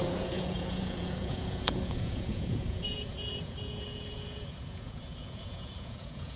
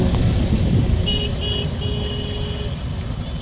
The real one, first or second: second